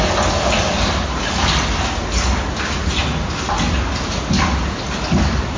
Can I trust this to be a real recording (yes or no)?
yes